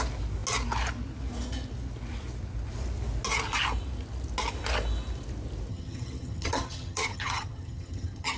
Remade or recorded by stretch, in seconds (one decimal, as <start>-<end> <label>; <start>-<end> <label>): 0.0-5.7 recorded; 5.7-8.4 remade